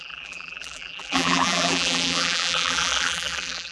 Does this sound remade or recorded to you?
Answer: remade